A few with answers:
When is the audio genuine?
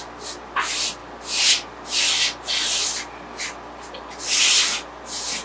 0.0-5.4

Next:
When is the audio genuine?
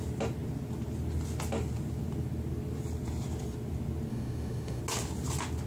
0.0-4.1; 4.8-5.7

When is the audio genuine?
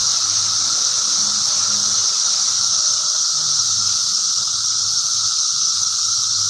0.0-2.0; 2.8-6.5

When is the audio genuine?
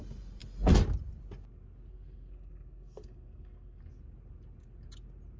0.0-1.9; 3.8-5.4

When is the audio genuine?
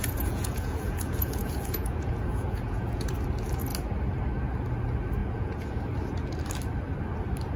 3.1-5.2; 5.8-7.6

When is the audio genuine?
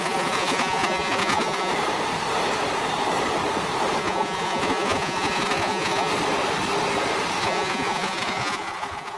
1.7-4.0; 6.1-7.4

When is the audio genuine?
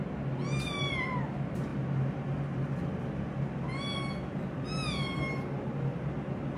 0.0-6.6